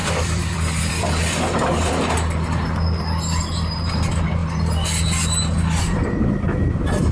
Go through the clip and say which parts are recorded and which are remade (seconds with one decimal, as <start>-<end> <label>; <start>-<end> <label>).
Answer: 0.0-2.0 remade; 2.0-7.1 recorded